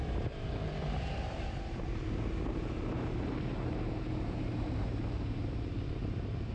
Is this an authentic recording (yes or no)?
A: no